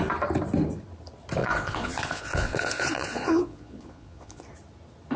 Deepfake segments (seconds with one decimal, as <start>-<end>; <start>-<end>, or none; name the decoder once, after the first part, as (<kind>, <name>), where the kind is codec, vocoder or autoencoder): 1.4-4.4 (vocoder, Vocos)